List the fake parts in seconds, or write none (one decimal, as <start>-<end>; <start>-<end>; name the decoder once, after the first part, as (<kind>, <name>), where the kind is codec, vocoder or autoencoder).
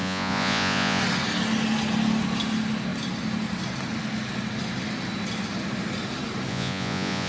0.0-1.0 (vocoder, Vocos); 6.5-7.3